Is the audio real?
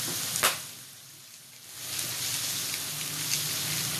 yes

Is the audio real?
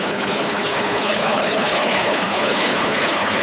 no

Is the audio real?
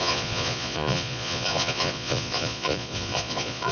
no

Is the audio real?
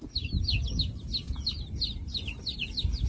yes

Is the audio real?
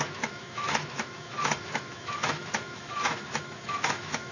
no